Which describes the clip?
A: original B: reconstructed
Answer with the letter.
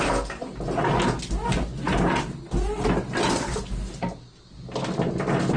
A